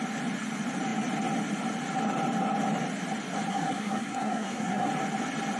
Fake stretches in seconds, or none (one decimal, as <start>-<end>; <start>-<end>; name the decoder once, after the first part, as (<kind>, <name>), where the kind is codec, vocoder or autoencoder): 3.5-4.9 (codec, SNAC)